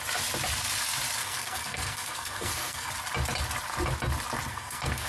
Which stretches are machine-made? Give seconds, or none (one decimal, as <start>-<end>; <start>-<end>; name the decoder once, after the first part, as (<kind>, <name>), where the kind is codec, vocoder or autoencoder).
1.2-2.9 (codec, SNAC); 4.5-5.1